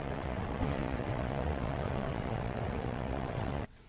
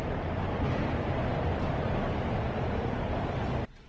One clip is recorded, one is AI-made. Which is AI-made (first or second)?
first